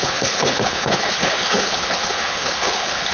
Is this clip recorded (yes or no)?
no